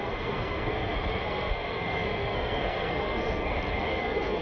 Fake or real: fake